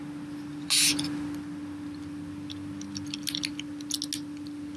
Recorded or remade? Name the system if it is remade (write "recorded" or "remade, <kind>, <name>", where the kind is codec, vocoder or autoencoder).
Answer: recorded